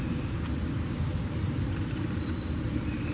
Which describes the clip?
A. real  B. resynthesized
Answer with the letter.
A